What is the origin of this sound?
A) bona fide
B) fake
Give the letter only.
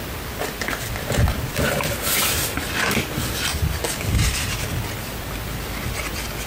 A